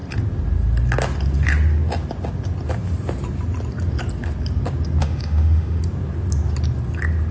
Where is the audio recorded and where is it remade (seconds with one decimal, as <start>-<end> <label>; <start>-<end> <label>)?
0.0-5.0 recorded; 5.0-5.8 remade; 5.8-7.3 recorded